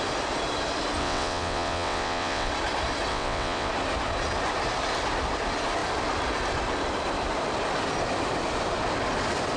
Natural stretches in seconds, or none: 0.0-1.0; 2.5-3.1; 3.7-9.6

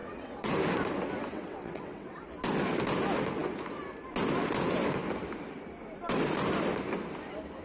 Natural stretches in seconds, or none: 0.5-1.3; 2.1-7.6

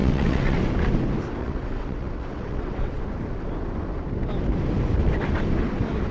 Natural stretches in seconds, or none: 0.6-1.4; 3.0-6.1

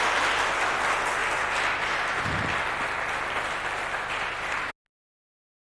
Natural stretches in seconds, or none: 0.0-5.8

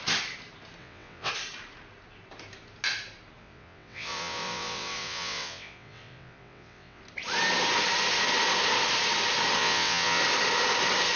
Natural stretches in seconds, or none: 0.0-0.8; 1.3-3.4; 7.0-9.6; 10.2-11.2

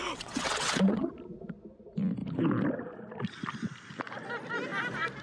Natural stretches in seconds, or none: 1.1-5.2

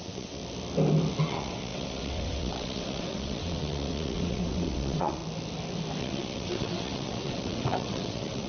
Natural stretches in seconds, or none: 0.4-1.2; 5.2-6.0

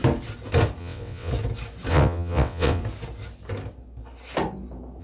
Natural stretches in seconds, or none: 0.0-0.8; 1.3-1.9; 2.8-5.0